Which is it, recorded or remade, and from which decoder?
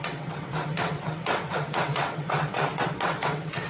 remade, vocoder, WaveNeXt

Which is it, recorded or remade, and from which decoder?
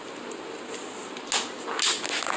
recorded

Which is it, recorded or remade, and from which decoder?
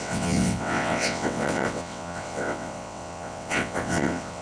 remade, vocoder, WaveNeXt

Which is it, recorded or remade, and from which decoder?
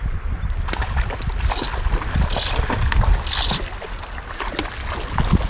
recorded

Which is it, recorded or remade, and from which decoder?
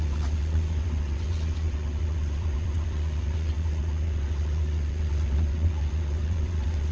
remade, vocoder, WaveNeXt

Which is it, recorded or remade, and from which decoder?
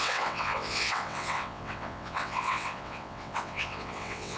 remade, vocoder, WaveNeXt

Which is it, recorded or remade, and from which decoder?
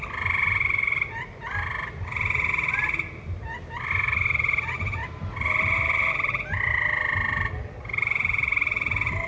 recorded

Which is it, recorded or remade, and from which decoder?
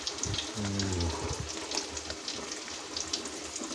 recorded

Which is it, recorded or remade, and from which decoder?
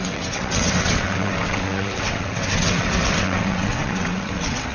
remade, vocoder, WaveNeXt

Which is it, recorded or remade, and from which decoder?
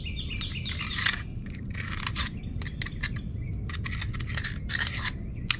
recorded